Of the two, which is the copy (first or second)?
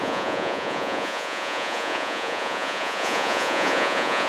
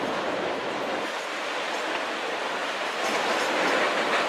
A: first